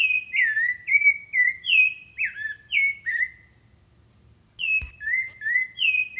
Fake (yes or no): no